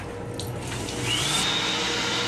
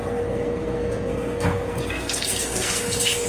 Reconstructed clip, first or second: second